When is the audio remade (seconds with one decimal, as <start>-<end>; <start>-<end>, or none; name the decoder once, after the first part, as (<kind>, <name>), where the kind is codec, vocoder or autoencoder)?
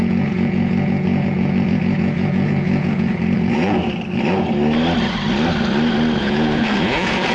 0.0-3.8 (vocoder, Vocos); 6.2-7.3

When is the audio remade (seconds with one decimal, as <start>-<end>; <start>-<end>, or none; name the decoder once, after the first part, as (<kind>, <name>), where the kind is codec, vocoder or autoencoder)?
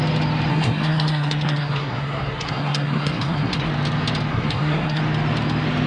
0.5-3.7 (codec, SNAC); 4.3-5.0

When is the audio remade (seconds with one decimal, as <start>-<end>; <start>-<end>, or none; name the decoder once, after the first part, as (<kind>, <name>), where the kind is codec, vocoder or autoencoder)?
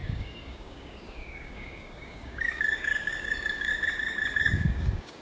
0.0-3.7 (codec, DAC); 4.4-5.2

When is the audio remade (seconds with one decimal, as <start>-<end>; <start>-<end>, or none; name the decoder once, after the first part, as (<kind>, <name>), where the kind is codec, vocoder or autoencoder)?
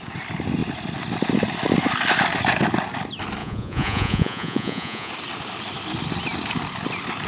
3.4-5.1 (vocoder, Vocos)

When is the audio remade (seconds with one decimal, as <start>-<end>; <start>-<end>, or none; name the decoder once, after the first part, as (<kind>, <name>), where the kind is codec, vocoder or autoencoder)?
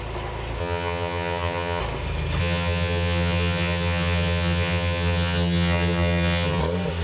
0.6-1.8 (vocoder, HiFi-GAN); 2.4-6.6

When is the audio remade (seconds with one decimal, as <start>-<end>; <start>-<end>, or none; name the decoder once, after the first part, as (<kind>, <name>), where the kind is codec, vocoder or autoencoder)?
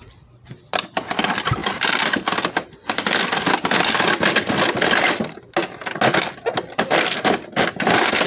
none